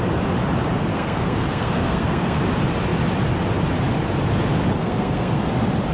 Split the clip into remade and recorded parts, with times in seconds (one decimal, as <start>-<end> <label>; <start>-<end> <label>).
0.0-0.9 recorded; 0.9-2.4 remade; 2.4-4.8 recorded; 4.8-5.4 remade; 5.4-5.9 recorded